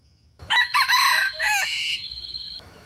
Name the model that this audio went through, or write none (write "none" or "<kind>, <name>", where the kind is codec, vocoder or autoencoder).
autoencoder, DAC-VAE